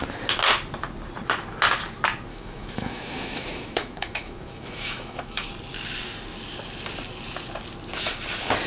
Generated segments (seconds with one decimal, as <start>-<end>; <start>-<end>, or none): 2.3-5.5